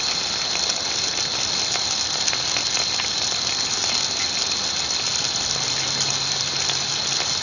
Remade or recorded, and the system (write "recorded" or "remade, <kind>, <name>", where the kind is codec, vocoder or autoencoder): recorded